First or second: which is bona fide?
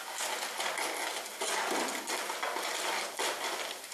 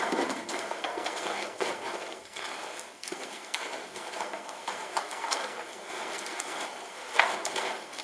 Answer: first